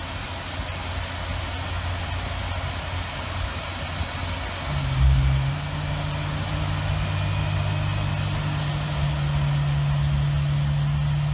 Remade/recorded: recorded